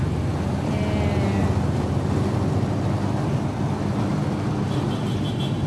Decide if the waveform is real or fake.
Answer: real